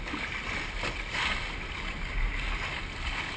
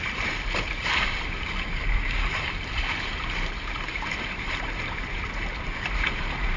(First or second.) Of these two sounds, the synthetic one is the second